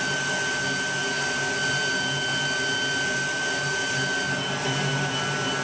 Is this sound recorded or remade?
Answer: recorded